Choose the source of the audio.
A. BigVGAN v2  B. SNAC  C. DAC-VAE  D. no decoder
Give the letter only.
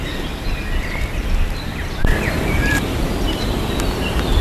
A